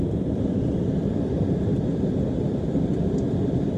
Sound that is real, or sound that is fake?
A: fake